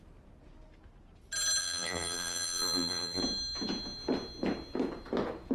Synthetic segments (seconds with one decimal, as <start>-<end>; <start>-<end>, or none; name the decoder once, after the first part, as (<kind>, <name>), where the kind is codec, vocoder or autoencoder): 1.6-3.2 (vocoder, BigVGAN v2)